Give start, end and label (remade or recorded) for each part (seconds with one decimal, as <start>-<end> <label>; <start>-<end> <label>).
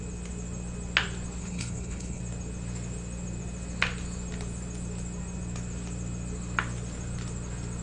0.0-1.4 recorded; 1.4-2.2 remade; 2.2-7.8 recorded